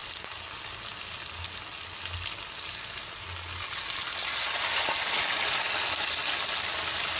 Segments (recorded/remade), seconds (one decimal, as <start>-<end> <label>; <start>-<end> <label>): 0.0-7.2 recorded